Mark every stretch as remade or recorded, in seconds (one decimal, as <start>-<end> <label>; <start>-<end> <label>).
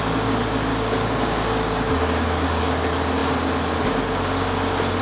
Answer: 0.0-0.7 recorded; 0.7-2.6 remade; 2.6-5.0 recorded